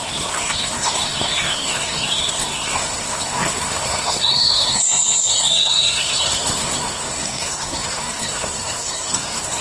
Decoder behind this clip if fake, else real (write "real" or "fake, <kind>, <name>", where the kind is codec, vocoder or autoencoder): fake, codec, SNAC